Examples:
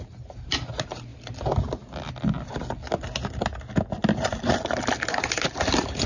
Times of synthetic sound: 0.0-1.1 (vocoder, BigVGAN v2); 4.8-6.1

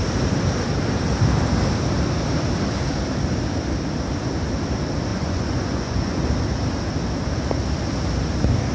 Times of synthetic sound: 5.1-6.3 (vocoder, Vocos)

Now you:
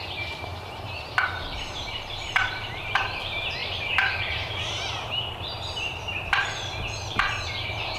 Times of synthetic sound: 0.0-8.0 (vocoder, BigVGAN v2)

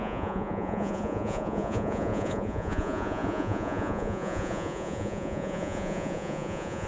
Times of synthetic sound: 0.0-6.9 (vocoder, Vocos)

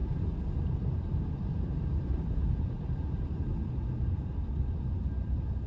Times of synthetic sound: 0.0-3.4 (vocoder, BigVGAN v2)